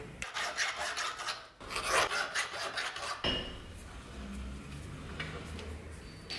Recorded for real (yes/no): yes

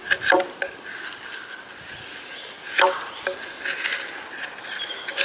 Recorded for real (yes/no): yes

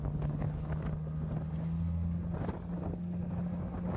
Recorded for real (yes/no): yes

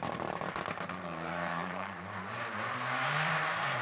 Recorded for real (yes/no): no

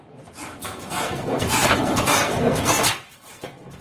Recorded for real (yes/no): no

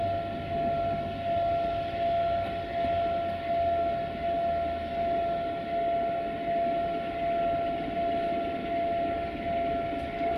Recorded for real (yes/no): yes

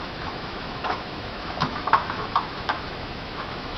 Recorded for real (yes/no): no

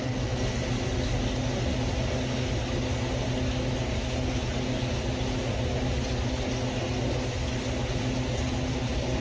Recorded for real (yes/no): yes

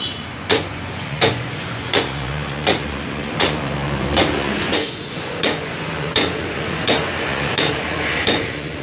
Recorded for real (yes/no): no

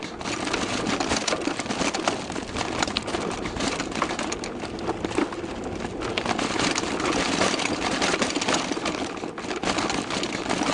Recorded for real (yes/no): yes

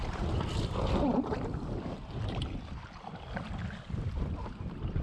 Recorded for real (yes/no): yes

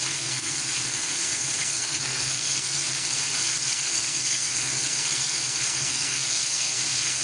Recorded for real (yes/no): no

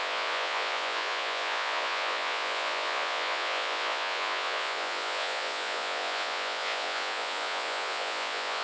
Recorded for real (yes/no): no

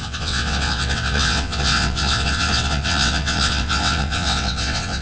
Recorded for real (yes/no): no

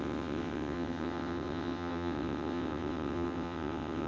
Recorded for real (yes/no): no